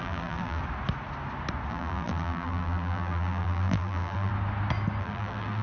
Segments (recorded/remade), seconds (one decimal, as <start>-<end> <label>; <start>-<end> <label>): 0.0-0.6 remade; 0.6-1.7 recorded; 1.7-4.3 remade; 4.3-5.0 recorded; 5.0-5.6 remade